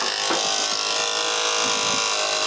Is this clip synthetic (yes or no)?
no